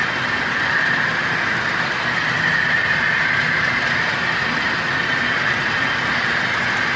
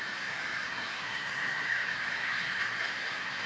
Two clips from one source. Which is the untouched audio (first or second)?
first